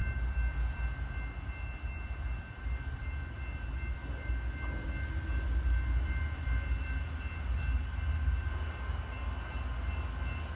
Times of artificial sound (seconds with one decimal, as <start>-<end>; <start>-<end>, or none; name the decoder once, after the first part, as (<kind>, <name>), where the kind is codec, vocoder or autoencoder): none